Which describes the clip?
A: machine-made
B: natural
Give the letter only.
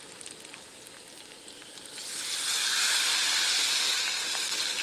B